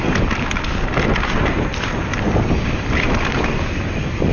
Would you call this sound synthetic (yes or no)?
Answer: no